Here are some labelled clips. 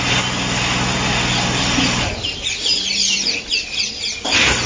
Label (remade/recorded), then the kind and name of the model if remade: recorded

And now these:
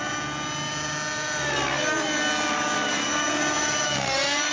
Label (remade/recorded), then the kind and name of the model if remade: recorded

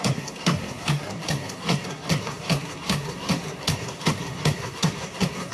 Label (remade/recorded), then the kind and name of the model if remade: remade, codec, SNAC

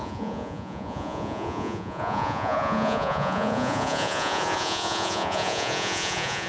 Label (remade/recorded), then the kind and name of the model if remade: remade, vocoder, Vocos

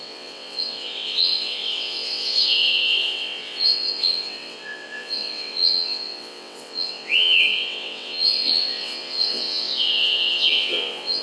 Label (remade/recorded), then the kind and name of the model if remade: remade, vocoder, WaveNeXt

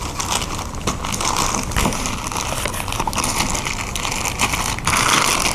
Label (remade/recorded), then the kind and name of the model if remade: recorded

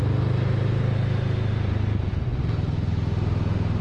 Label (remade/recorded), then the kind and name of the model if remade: recorded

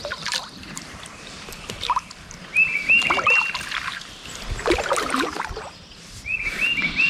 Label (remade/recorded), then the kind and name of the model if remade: recorded